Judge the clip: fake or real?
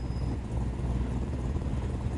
fake